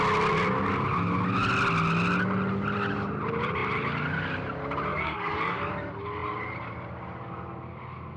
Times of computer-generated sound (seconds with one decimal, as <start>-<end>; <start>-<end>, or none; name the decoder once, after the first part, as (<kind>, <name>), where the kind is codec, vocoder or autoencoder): 4.9-5.7 (codec, DAC)